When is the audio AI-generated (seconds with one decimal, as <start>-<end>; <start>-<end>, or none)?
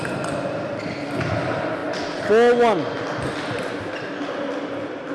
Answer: none